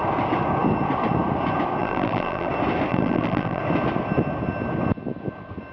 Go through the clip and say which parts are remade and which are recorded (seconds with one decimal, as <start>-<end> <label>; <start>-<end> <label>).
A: 0.0-1.8 recorded; 1.8-2.5 remade; 2.5-2.9 recorded; 2.9-3.6 remade; 3.6-5.7 recorded